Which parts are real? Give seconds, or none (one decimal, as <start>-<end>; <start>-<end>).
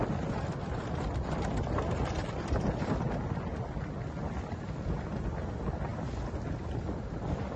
0.0-7.6